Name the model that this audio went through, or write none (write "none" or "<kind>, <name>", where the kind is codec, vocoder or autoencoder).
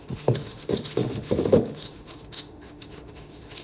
autoencoder, DAC-VAE